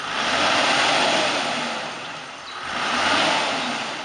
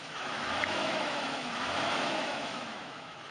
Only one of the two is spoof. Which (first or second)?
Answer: second